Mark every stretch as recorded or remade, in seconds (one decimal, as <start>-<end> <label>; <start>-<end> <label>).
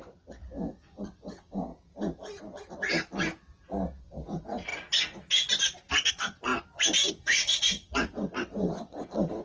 0.0-1.7 remade; 1.7-4.0 recorded; 4.0-4.7 remade; 4.7-6.1 recorded; 6.1-6.5 remade; 6.5-7.1 recorded; 7.1-9.4 remade